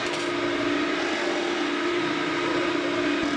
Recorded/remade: recorded